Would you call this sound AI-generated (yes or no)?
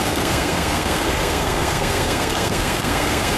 yes